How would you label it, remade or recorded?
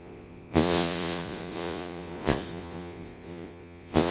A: remade